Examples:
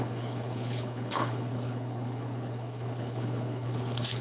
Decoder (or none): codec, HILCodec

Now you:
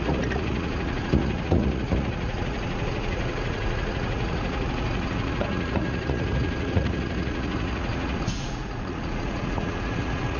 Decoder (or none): vocoder, Vocos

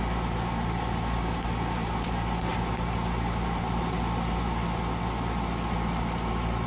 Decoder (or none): none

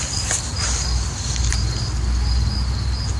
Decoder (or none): none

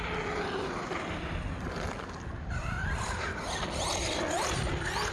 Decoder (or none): none